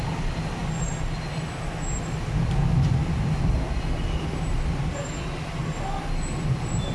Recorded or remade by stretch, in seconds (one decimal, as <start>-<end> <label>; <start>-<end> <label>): 0.0-6.9 recorded